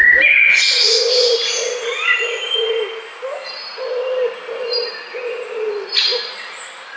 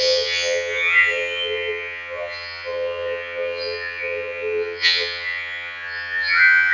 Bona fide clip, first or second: first